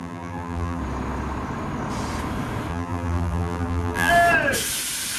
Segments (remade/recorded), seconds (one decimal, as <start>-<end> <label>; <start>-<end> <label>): 0.0-0.8 remade; 0.8-2.7 recorded; 2.7-4.1 remade; 4.1-5.2 recorded